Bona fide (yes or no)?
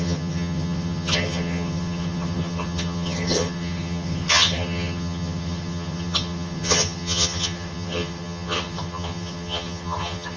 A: no